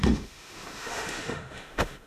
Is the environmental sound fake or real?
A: fake